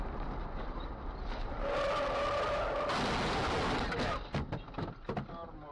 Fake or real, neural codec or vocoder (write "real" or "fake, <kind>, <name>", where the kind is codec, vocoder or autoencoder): real